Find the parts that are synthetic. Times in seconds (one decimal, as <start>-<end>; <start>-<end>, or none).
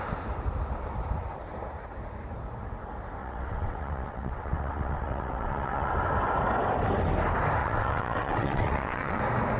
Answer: 3.2-5.9; 7.6-9.2